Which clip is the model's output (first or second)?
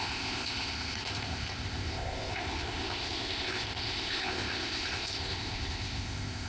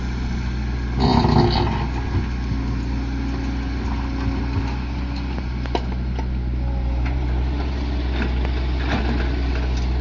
first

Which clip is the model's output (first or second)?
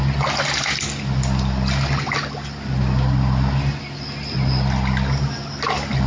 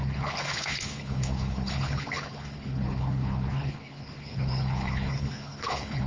second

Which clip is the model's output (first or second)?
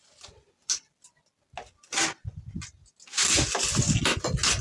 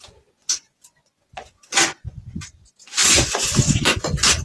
second